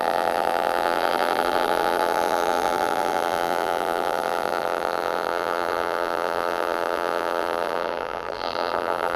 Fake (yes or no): yes